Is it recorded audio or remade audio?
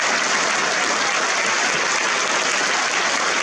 recorded